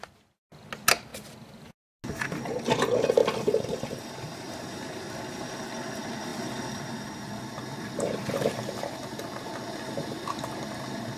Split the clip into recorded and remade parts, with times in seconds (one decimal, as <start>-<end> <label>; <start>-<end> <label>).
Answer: 0.0-1.1 recorded; 1.1-2.0 remade; 2.0-3.2 recorded; 3.2-4.5 remade; 4.5-6.3 recorded; 6.3-9.5 remade; 9.5-11.2 recorded